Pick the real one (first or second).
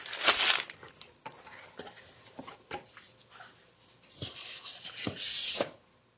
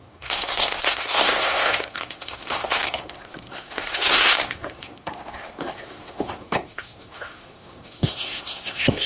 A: first